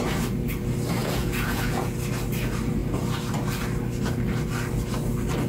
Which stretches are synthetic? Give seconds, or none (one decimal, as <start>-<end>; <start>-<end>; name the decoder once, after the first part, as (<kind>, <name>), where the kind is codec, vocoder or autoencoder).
1.0-1.9 (vocoder, Vocos)

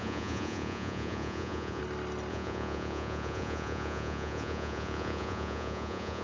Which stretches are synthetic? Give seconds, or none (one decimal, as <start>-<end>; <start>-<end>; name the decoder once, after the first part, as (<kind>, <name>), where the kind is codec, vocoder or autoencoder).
0.0-1.8 (vocoder, Vocos); 2.3-6.2

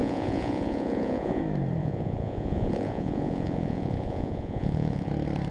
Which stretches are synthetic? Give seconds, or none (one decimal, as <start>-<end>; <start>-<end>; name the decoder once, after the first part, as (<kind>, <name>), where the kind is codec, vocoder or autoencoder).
0.0-1.4 (vocoder, Vocos); 1.8-5.1

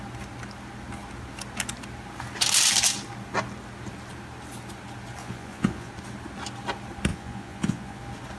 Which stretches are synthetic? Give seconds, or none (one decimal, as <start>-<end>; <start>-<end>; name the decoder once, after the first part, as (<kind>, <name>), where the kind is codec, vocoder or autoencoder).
5.2-5.9 (vocoder, Vocos); 7.1-8.0